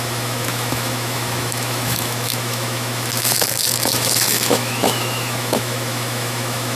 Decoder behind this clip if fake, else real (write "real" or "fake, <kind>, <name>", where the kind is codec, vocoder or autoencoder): fake, autoencoder, DAC-VAE